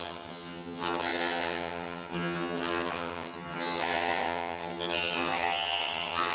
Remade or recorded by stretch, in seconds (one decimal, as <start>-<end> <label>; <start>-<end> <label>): 0.0-6.3 remade